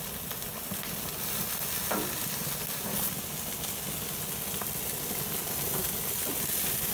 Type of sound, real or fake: real